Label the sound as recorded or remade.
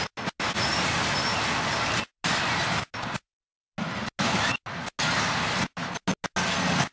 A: recorded